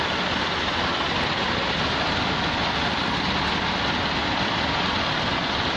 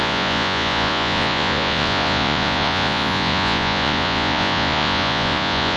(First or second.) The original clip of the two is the first